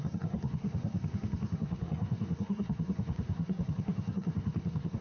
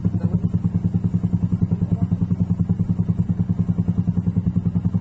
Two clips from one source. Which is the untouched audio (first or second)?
second